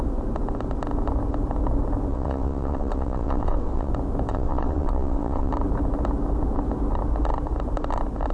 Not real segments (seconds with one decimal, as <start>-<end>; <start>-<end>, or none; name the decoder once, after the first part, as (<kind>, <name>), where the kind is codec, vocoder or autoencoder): 2.1-3.9 (vocoder, WaveNeXt); 4.3-5.5